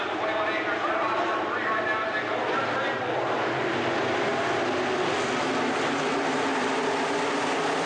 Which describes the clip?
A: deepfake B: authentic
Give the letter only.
B